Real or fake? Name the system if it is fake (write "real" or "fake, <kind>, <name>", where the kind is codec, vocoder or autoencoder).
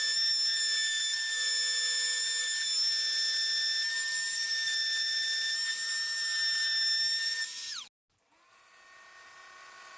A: real